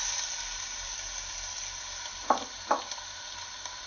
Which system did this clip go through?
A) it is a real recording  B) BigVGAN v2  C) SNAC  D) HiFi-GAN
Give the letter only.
A